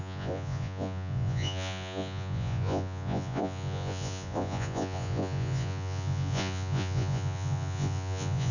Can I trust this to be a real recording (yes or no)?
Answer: no